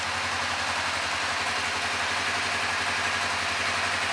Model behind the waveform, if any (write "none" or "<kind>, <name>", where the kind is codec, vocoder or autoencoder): none